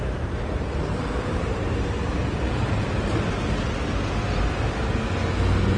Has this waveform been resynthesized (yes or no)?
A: no